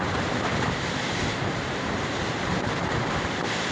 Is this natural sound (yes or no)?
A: yes